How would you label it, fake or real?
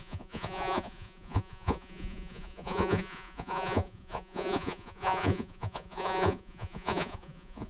fake